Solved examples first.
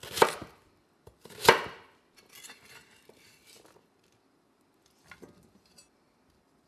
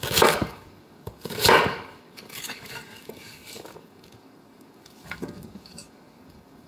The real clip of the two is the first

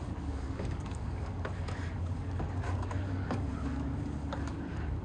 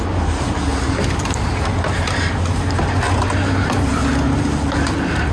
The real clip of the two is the second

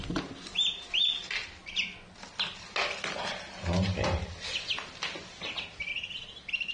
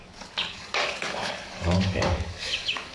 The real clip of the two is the first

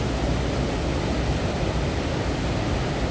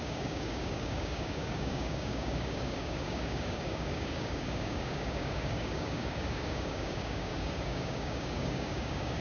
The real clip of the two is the first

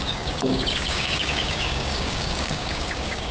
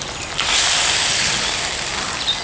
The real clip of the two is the second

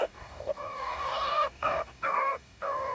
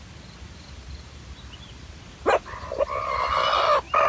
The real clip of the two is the second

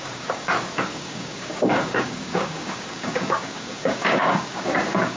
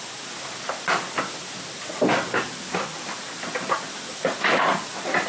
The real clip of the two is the second